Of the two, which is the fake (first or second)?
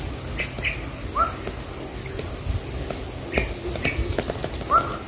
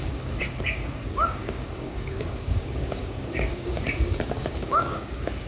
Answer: second